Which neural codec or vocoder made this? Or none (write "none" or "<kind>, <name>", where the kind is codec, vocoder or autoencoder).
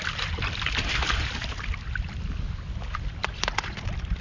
none